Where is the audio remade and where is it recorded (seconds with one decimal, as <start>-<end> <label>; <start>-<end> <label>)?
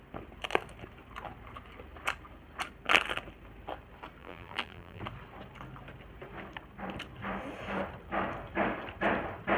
0.0-4.2 recorded; 4.2-5.0 remade; 5.0-9.6 recorded